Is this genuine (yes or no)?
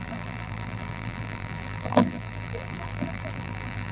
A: no